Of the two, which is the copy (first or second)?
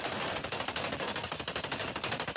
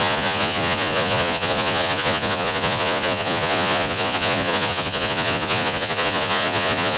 second